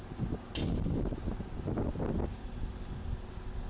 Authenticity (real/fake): real